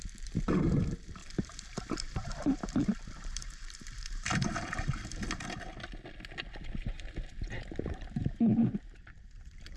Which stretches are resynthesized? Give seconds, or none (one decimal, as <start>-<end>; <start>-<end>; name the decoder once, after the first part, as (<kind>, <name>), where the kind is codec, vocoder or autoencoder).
0.0-5.2 (vocoder, BigVGAN v2); 6.8-9.8